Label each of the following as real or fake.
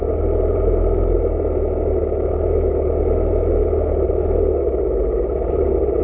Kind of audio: real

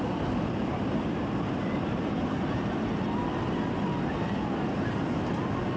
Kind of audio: fake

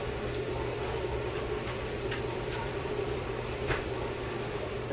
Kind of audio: fake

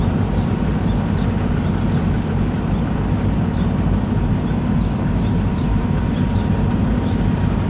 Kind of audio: fake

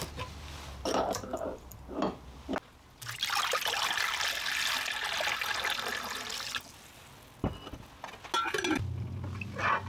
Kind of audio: real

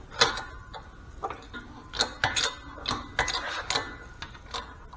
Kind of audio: real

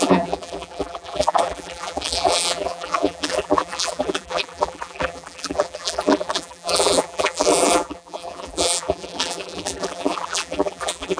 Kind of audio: fake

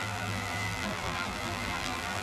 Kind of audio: fake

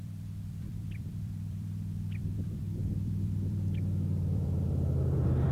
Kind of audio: fake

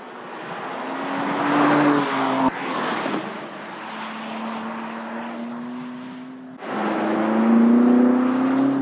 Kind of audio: real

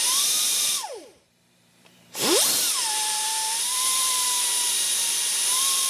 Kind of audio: fake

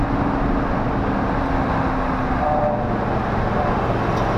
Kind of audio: real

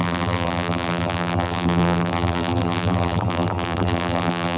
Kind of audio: fake